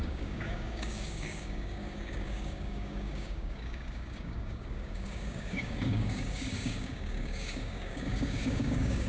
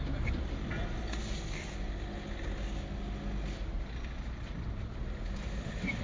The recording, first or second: second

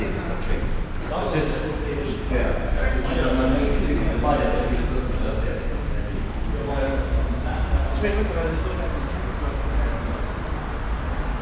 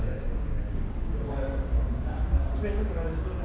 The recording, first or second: first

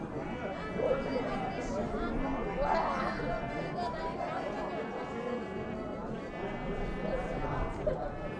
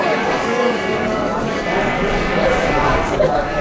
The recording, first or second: first